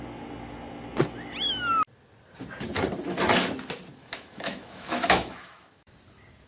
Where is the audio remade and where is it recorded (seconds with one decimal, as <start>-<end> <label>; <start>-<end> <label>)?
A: 0.0-4.0 recorded; 4.0-5.9 remade; 5.9-6.5 recorded